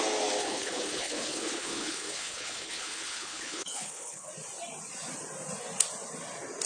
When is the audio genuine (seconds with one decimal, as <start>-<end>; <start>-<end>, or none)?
0.0-0.4; 4.3-6.7